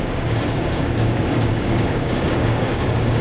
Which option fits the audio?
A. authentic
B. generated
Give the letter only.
B